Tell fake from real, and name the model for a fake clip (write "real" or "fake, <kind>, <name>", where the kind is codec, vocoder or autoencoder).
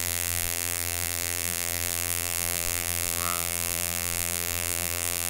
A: fake, vocoder, BigVGAN v2